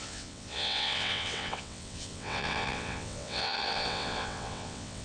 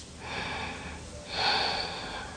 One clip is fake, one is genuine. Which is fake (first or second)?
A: first